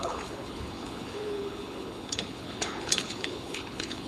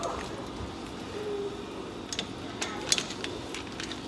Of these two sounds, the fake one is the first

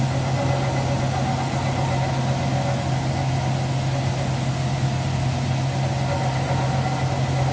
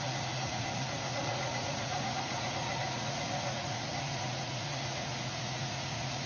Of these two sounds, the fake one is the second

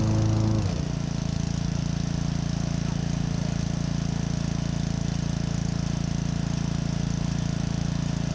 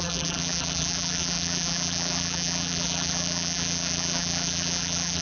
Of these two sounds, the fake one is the second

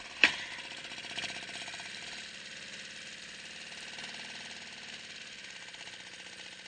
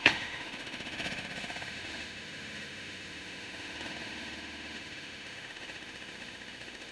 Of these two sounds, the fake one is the second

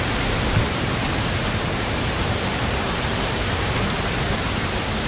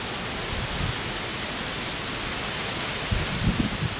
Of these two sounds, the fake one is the first